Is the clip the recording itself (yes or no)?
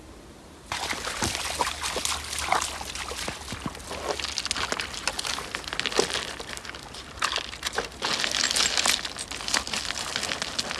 yes